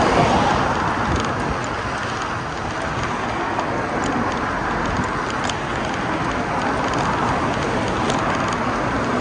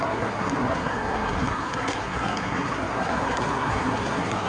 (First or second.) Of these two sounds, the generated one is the second